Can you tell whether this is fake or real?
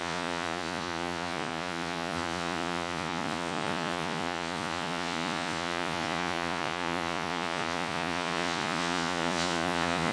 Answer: fake